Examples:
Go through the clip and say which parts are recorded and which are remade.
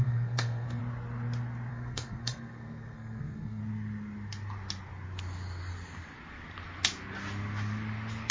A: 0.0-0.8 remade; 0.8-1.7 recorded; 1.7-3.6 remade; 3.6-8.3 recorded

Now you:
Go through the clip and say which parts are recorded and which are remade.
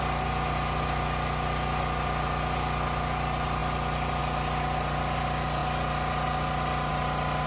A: 0.0-7.5 recorded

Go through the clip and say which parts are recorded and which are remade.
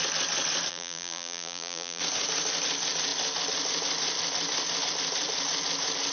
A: 0.0-0.7 recorded; 0.7-2.0 remade; 2.0-6.1 recorded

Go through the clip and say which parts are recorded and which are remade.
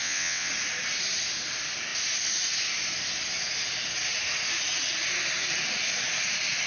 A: 0.0-0.5 remade; 0.5-6.7 recorded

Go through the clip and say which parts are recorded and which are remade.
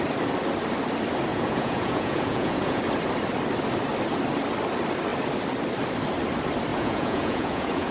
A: 0.0-1.3 recorded; 1.3-2.8 remade; 2.8-6.7 recorded; 6.7-7.9 remade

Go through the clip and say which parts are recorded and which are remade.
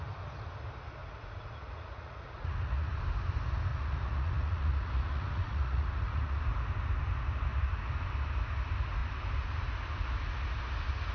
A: 0.0-1.0 recorded; 1.0-3.0 remade; 3.0-3.7 recorded; 3.7-6.4 remade; 6.4-11.1 recorded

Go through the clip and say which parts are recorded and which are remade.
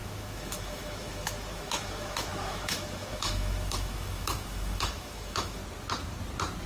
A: 0.0-5.6 remade; 5.6-6.7 recorded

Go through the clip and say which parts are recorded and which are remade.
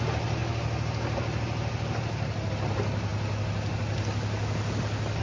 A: 0.0-5.2 recorded